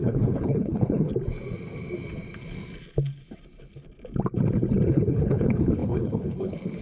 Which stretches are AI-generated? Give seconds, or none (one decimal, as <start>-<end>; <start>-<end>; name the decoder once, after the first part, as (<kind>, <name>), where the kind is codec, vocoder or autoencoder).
0.0-1.1 (codec, HILCodec); 4.9-6.8